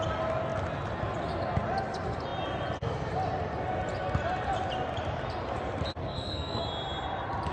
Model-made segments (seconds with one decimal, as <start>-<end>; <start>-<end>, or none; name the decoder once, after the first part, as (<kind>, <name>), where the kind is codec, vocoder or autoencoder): 6.0-6.6 (codec, SNAC)